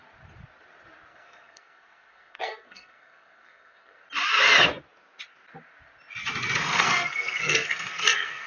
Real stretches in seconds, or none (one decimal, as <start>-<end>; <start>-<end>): 0.0-1.1; 4.0-6.6